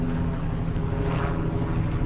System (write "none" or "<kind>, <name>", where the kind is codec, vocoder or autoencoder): none